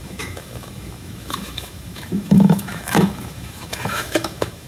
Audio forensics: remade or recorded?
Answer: remade